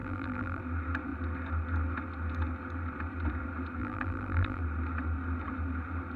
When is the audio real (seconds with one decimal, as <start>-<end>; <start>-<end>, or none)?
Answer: 0.6-3.8; 4.6-6.2